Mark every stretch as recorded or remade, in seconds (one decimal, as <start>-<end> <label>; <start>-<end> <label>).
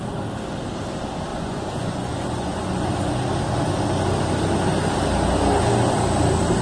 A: 0.0-1.3 recorded; 1.3-2.9 remade; 2.9-6.6 recorded